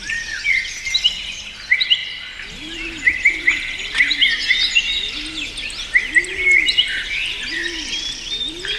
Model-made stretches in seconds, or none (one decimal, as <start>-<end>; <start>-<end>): none